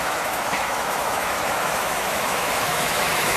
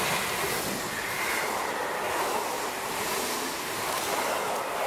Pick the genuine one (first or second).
second